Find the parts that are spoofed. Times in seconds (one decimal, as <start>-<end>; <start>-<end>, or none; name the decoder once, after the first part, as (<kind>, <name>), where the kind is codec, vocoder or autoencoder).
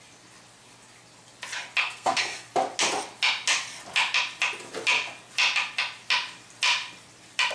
1.8-2.5 (codec, SNAC)